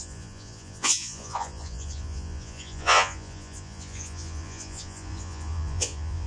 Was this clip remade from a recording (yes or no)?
yes